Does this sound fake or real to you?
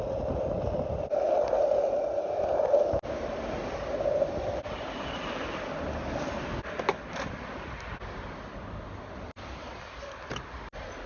real